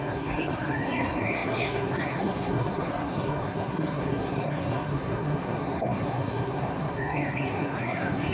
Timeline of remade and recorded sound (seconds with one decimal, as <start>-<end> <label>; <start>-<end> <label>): 0.0-8.3 remade